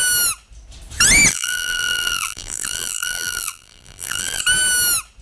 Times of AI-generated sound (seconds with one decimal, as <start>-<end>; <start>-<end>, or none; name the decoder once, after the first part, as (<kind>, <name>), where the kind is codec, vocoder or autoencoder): 1.3-4.4 (vocoder, BigVGAN v2)